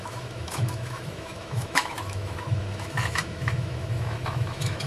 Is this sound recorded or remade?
remade